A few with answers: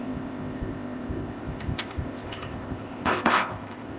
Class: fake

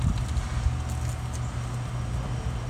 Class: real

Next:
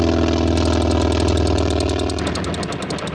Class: real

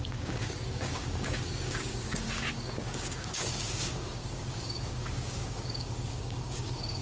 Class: fake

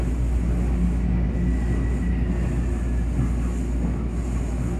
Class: real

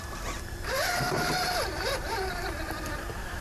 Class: fake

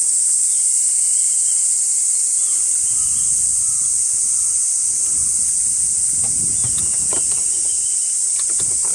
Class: real